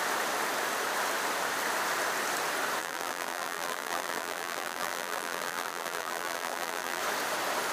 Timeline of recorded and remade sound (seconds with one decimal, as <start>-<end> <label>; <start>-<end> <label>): 0.0-2.8 recorded; 2.8-7.0 remade; 7.0-7.7 recorded